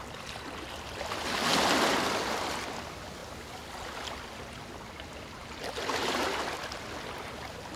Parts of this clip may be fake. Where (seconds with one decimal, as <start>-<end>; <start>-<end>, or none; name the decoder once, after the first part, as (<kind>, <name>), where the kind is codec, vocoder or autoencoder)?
none

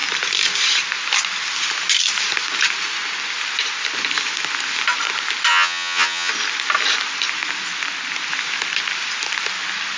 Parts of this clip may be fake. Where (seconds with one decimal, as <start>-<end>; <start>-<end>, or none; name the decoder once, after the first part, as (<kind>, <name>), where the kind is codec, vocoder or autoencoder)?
5.5-6.3 (vocoder, HiFi-GAN)

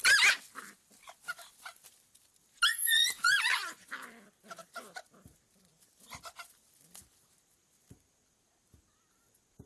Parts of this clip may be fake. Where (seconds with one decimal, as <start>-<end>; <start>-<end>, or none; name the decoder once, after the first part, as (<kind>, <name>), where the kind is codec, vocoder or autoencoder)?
2.7-3.9 (vocoder, Vocos)